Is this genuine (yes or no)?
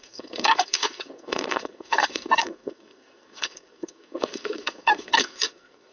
no